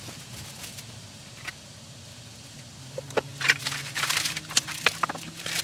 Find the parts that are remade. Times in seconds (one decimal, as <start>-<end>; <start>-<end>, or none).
3.3-5.6

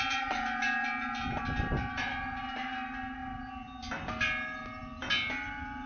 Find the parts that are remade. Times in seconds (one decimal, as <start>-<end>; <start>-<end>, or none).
none

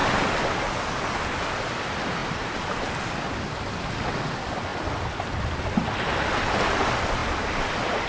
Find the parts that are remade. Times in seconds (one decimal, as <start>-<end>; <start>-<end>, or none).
2.2-2.9

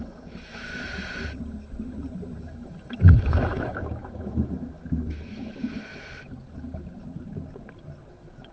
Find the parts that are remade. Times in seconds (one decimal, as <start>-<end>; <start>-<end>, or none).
0.0-0.7; 2.4-5.9; 8.1-8.5

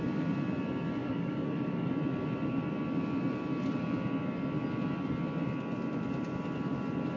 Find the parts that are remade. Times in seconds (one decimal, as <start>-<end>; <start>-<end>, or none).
1.0-1.9